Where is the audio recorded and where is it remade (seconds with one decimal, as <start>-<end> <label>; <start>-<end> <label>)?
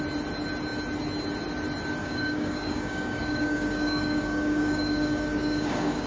0.0-2.0 recorded; 2.0-6.1 remade